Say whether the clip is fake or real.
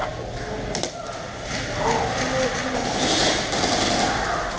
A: real